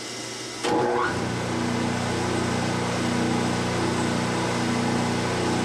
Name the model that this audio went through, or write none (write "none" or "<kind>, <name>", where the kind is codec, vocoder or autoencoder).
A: none